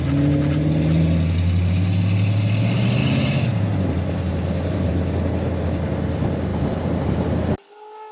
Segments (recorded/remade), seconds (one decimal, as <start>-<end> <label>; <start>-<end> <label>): 0.0-3.0 recorded; 3.0-4.9 remade; 4.9-6.5 recorded; 6.5-7.1 remade; 7.1-8.1 recorded

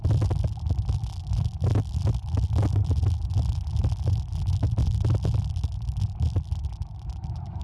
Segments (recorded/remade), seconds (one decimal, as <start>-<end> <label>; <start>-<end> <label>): 0.0-7.6 recorded

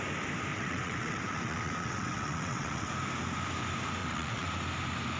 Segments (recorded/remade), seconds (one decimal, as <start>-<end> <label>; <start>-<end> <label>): 0.0-0.5 recorded; 0.5-2.9 remade; 2.9-4.0 recorded; 4.0-4.5 remade; 4.5-5.2 recorded

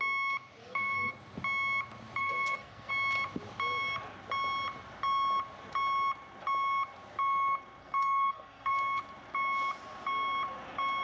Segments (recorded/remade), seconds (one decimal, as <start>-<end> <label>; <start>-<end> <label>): 0.0-0.6 recorded; 0.6-1.1 remade; 1.1-2.2 recorded; 2.2-2.9 remade; 2.9-7.8 recorded; 7.8-8.7 remade; 8.7-11.0 recorded

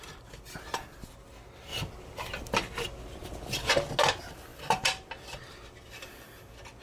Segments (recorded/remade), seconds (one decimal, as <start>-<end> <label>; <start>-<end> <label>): 0.0-1.7 recorded; 1.7-3.7 remade; 3.7-4.5 recorded; 4.5-5.9 remade; 5.9-6.8 recorded

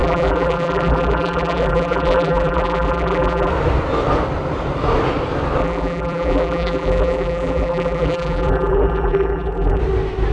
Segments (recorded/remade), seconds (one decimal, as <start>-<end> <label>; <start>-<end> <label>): 0.0-3.5 remade; 3.5-5.6 recorded; 5.6-9.8 remade; 9.8-10.3 recorded

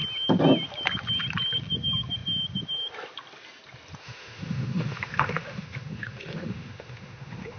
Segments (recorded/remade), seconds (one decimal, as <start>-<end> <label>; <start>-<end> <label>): 0.0-4.0 recorded; 4.0-7.6 remade

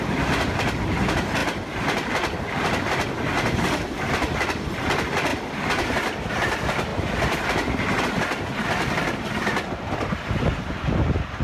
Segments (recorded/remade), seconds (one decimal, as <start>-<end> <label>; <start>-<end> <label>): 0.0-5.3 recorded; 5.3-6.3 remade; 6.3-11.4 recorded